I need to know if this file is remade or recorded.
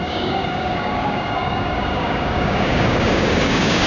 remade